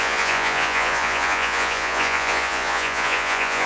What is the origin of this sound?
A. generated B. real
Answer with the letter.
A